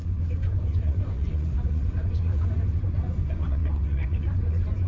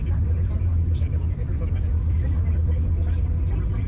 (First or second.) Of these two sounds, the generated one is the first